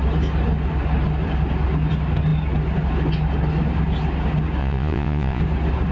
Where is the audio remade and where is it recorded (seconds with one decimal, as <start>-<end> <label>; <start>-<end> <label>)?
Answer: 0.0-4.6 recorded; 4.6-5.4 remade; 5.4-5.9 recorded